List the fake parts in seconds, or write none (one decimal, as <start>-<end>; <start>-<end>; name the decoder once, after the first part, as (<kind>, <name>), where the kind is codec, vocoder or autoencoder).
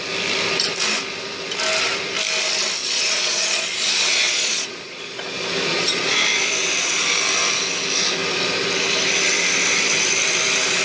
2.8-5.2 (vocoder, Vocos); 5.7-6.2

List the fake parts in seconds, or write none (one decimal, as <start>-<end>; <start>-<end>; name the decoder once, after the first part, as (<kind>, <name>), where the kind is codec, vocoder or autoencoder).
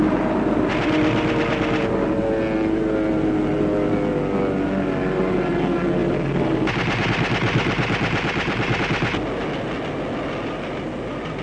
none